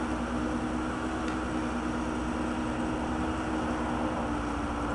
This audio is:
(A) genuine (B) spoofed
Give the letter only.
A